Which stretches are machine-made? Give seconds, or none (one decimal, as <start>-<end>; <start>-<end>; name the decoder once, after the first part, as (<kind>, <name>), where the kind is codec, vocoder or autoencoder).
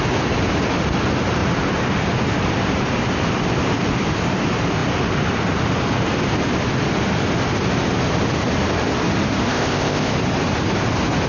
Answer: 9.5-10.1 (codec, ZipCodec)